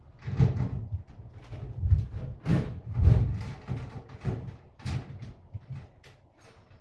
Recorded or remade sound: recorded